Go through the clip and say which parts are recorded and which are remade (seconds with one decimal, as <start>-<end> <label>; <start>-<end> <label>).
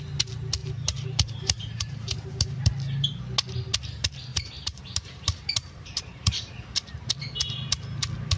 0.0-0.6 recorded; 0.6-2.6 remade; 2.6-4.3 recorded; 4.3-6.5 remade; 6.5-8.4 recorded